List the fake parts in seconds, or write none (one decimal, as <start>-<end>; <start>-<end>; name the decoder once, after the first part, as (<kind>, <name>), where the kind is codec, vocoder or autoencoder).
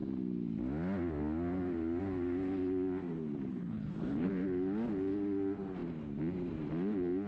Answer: 3.5-4.3 (codec, HILCodec)